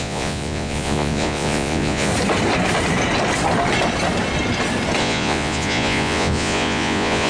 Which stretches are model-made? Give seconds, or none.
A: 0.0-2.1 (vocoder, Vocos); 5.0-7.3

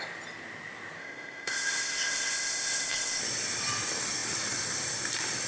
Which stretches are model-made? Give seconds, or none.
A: 1.0-3.2 (codec, ZipCodec)

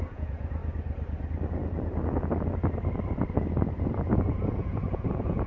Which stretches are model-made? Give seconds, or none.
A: 0.0-0.6 (vocoder, Vocos); 3.9-5.5

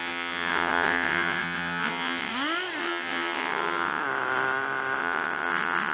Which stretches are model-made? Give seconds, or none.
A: 0.0-2.3 (vocoder, WaveNeXt); 2.8-4.0; 5.0-5.9

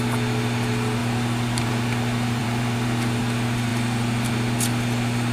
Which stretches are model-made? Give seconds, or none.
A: 1.0-3.2 (vocoder, BigVGAN v2); 3.7-4.3

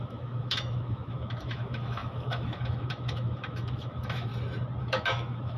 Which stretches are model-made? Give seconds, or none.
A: 0.0-4.3 (autoencoder, DAC-VAE); 4.8-5.6

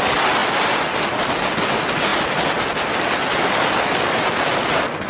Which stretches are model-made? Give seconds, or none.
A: none

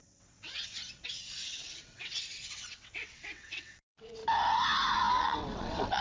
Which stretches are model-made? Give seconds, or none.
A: 0.0-4.2 (vocoder, WaveNeXt); 5.2-6.0